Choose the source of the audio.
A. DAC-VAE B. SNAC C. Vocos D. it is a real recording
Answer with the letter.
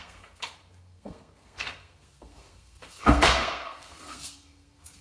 B